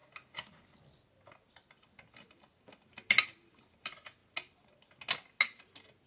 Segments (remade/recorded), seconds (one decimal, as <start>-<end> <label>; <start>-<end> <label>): 0.0-6.1 recorded